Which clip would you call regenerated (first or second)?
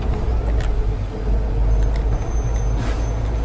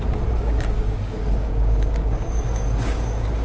second